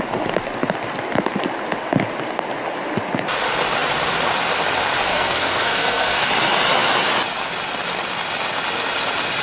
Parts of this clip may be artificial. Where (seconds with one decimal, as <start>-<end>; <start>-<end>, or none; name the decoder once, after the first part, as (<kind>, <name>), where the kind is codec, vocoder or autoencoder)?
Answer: 5.1-6.3 (codec, SNAC)